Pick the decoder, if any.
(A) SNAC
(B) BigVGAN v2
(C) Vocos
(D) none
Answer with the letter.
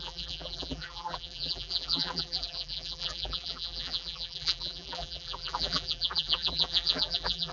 B